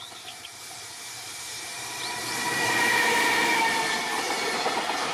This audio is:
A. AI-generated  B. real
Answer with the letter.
A